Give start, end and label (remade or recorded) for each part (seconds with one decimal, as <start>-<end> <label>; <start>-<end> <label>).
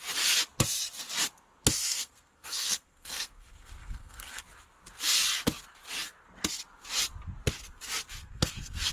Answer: 0.0-1.8 recorded; 1.8-4.4 remade; 4.4-8.2 recorded; 8.2-8.9 remade